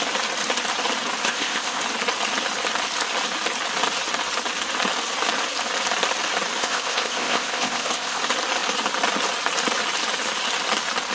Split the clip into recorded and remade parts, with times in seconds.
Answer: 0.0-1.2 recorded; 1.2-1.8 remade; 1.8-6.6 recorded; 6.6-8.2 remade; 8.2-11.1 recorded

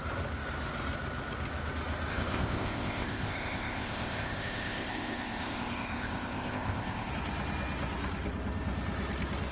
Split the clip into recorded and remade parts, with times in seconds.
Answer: 0.0-2.1 recorded; 2.1-7.1 remade; 7.1-9.5 recorded

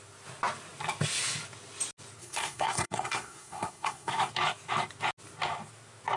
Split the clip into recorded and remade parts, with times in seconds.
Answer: 0.0-2.2 recorded; 2.2-4.3 remade; 4.3-6.2 recorded